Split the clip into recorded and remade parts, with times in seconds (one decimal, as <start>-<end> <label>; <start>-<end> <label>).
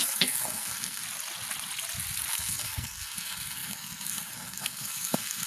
0.0-1.0 remade; 1.0-2.3 recorded; 2.3-5.5 remade